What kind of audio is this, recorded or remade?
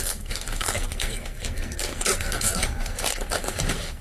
remade